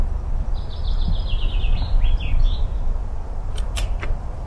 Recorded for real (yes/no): yes